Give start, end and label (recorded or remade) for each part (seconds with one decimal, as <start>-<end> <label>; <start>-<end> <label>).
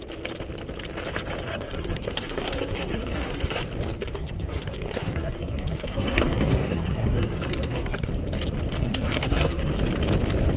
0.0-1.5 recorded; 1.5-3.6 remade; 3.6-4.0 recorded; 4.0-8.1 remade; 8.1-8.8 recorded; 8.8-9.7 remade; 9.7-10.6 recorded